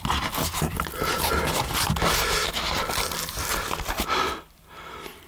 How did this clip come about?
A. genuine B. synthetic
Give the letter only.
A